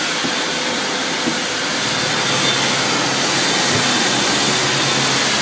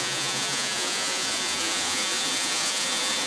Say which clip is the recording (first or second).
first